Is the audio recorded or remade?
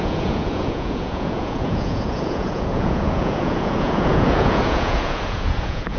remade